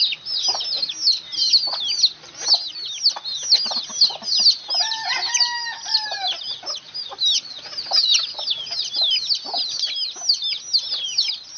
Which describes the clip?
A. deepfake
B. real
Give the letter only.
B